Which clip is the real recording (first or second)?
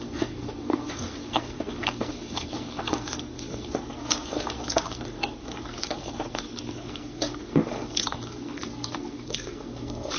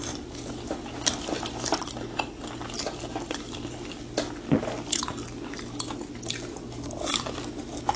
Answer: second